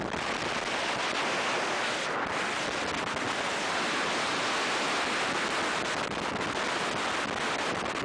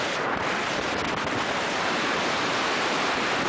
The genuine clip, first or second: first